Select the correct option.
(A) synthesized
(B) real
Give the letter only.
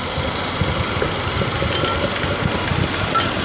B